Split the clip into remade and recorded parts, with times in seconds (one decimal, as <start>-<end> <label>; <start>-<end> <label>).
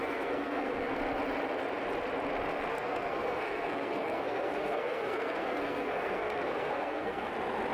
0.0-1.0 remade; 1.0-2.7 recorded; 2.7-7.3 remade; 7.3-7.7 recorded